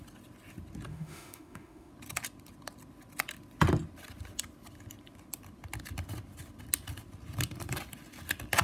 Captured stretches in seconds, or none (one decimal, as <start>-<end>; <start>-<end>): 0.0-0.9; 1.9-8.6